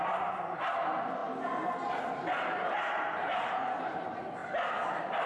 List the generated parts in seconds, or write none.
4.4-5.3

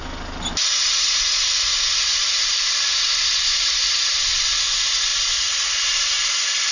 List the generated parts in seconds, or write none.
none